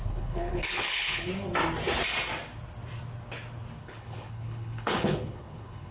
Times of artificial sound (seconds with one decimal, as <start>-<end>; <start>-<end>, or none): 0.0-1.3; 3.8-5.9